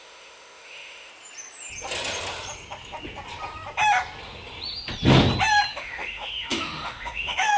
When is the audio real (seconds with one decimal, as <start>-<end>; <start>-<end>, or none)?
1.1-5.7